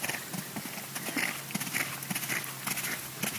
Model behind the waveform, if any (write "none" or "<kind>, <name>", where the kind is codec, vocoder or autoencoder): none